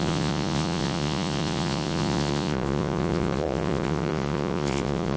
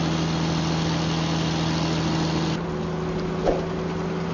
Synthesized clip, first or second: first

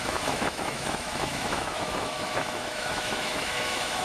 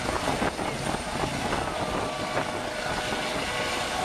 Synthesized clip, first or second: first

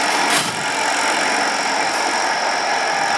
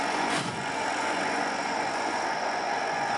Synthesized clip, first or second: second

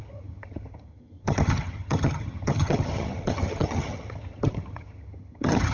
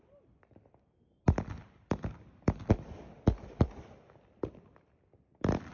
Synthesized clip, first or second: first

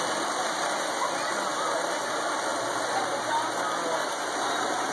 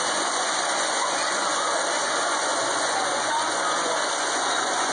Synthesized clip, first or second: second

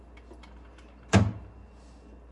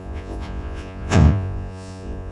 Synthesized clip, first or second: second